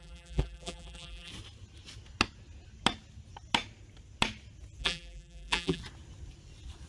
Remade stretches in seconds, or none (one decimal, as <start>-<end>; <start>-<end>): 0.0-1.3; 4.8-5.8